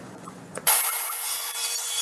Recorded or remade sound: remade